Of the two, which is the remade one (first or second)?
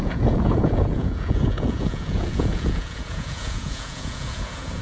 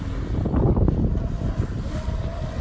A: first